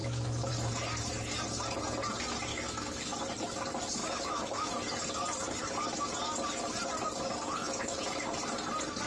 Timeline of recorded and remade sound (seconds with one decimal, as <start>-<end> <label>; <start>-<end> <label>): 0.0-0.5 remade; 0.5-2.5 recorded; 2.5-3.2 remade; 3.2-4.0 recorded; 4.0-4.7 remade; 4.7-7.6 recorded; 7.6-8.2 remade; 8.2-9.1 recorded